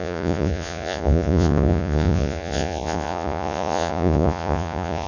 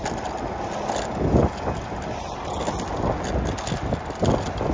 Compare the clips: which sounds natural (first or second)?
second